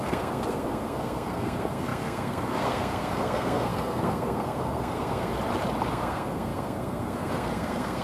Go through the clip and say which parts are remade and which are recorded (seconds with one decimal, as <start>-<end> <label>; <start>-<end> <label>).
0.0-5.3 remade; 5.3-5.9 recorded; 5.9-8.0 remade